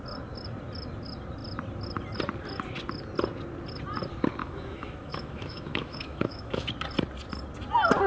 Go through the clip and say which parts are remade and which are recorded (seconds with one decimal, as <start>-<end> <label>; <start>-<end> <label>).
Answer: 0.0-4.4 recorded; 4.4-6.7 remade; 6.7-8.1 recorded